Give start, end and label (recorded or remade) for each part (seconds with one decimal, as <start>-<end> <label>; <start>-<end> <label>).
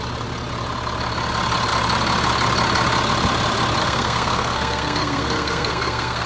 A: 0.0-3.8 recorded; 3.8-6.3 remade